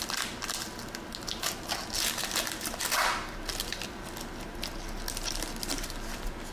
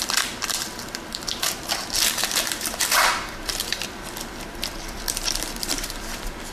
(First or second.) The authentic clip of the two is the first